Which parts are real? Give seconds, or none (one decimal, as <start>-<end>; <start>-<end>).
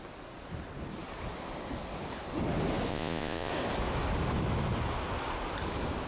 0.0-2.9; 3.5-6.1